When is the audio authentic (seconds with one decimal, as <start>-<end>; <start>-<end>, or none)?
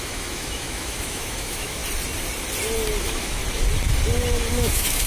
1.8-3.0; 3.4-4.5